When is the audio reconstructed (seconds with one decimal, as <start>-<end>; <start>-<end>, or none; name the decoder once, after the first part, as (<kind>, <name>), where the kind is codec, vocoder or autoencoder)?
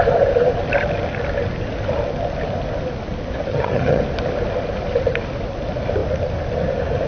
3.5-4.0 (vocoder, HiFi-GAN)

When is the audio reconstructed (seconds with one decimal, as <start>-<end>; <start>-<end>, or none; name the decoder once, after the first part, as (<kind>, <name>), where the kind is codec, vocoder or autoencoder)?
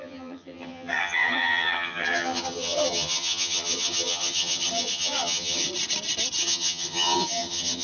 0.0-5.7 (vocoder, HiFi-GAN); 6.4-7.8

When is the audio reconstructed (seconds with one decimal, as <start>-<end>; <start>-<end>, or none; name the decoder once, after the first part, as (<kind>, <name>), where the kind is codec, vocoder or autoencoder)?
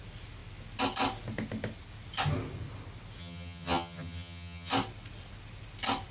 3.2-4.7 (vocoder, HiFi-GAN)